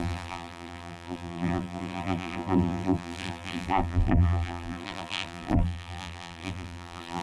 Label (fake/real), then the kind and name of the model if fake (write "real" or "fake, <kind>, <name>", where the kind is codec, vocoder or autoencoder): fake, vocoder, BigVGAN v2